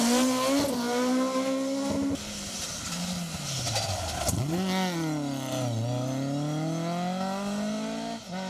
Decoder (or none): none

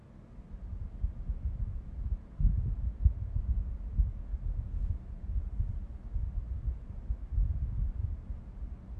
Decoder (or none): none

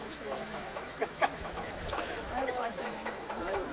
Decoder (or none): autoencoder, DAC-VAE